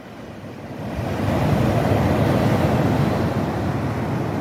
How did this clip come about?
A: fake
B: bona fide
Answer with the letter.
B